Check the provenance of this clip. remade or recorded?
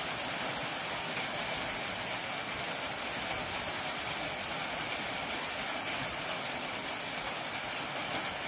recorded